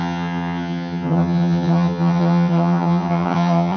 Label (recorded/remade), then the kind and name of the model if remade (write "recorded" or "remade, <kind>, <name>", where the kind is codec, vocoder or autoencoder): remade, vocoder, HiFi-GAN